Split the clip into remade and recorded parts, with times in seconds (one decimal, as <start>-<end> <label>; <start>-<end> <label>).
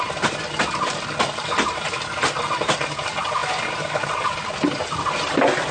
0.0-5.7 recorded